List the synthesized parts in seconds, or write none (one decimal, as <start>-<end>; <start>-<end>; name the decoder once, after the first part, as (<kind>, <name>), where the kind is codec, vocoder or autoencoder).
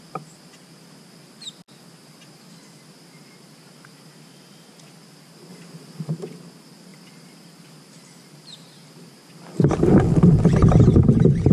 6.9-9.7 (vocoder, BigVGAN v2)